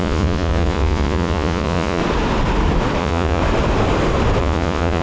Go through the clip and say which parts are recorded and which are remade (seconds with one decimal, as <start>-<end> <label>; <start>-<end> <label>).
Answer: 0.0-2.0 remade; 2.0-3.0 recorded; 3.0-3.4 remade; 3.4-4.4 recorded; 4.4-5.0 remade